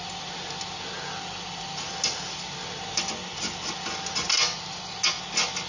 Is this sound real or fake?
real